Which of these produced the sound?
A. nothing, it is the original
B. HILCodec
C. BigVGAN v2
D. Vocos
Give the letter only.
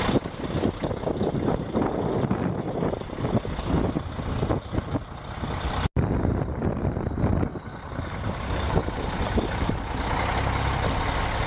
A